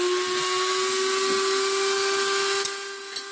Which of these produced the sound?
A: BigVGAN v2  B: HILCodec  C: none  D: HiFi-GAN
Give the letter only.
C